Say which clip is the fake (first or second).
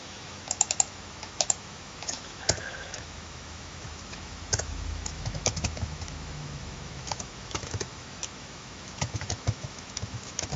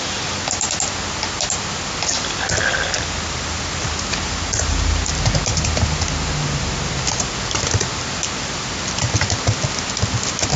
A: first